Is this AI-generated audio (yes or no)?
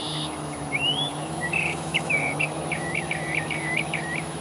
yes